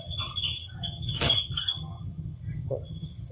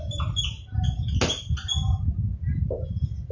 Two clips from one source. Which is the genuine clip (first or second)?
second